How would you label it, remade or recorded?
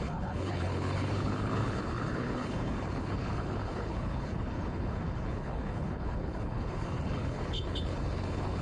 remade